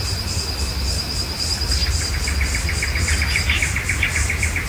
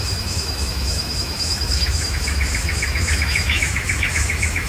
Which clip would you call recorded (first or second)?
first